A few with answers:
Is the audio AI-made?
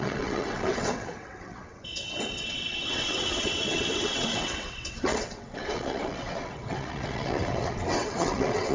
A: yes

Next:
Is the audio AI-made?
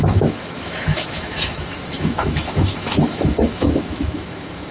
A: yes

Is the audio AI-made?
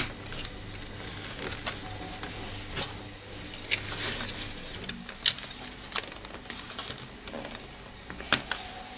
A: no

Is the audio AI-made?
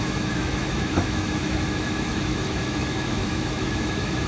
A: yes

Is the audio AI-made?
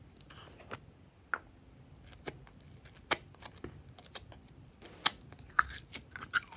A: no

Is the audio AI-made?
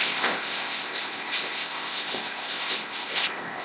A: yes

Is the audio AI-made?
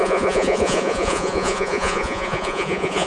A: yes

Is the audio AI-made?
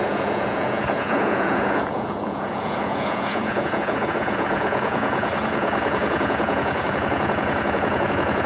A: yes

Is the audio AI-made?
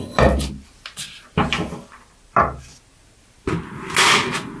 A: no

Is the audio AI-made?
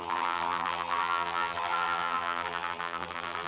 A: yes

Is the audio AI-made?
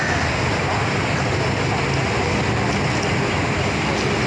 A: no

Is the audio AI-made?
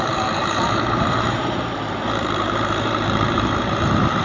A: yes